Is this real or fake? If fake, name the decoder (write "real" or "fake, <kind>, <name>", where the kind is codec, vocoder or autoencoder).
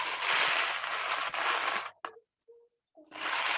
real